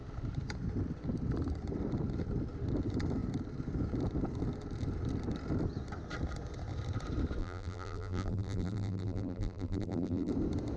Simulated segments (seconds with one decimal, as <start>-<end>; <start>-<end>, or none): 7.4-10.3

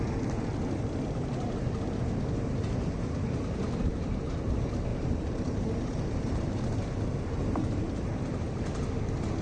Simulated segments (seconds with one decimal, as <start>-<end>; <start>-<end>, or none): 4.9-6.6; 7.4-8.8

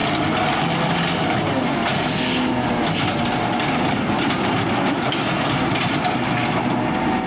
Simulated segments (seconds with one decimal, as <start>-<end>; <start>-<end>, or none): none

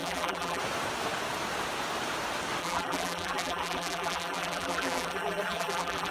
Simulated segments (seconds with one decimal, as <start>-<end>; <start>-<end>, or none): 0.0-0.6; 2.6-6.1

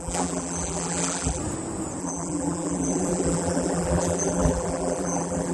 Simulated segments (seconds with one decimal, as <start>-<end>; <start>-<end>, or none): 0.0-1.4; 2.0-5.5

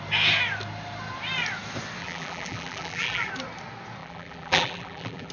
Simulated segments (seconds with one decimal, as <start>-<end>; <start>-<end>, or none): 2.0-3.3; 4.0-5.3

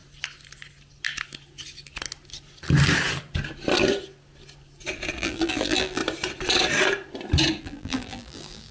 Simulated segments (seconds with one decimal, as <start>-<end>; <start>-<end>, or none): 5.2-6.0; 7.6-8.7

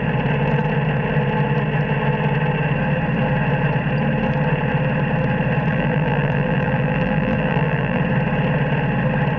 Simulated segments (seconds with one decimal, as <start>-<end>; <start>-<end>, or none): 5.7-8.0